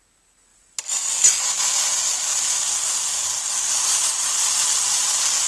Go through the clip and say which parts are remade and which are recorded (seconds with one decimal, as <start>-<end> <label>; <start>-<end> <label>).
0.0-0.5 recorded; 0.5-1.1 remade; 1.1-5.5 recorded